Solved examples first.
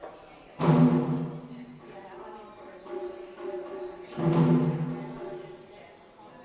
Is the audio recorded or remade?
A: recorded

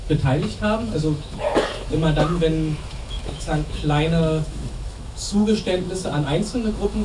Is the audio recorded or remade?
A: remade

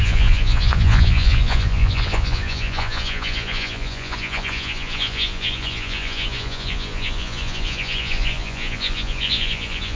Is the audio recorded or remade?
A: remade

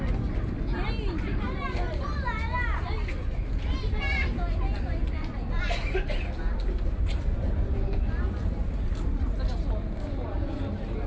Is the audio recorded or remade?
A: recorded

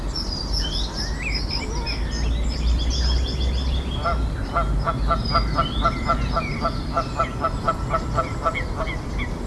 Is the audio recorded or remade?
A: recorded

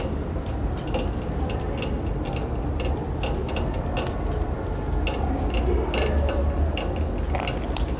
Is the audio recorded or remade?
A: recorded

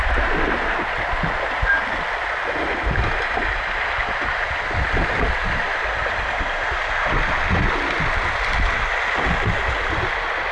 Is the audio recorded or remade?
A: recorded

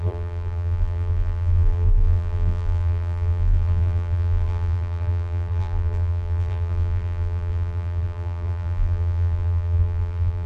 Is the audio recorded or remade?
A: remade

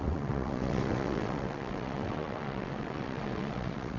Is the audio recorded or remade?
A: remade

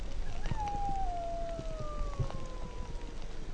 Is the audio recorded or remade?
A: recorded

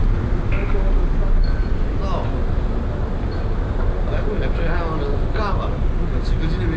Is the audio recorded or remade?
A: recorded